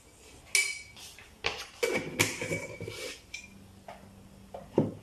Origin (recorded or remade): recorded